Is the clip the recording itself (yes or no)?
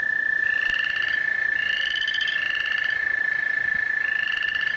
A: yes